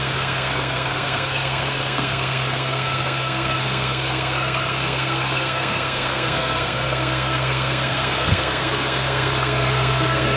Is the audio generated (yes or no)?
yes